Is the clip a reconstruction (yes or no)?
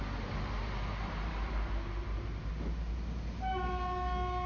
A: no